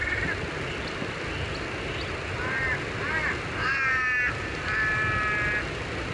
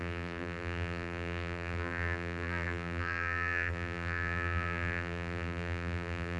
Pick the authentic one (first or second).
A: first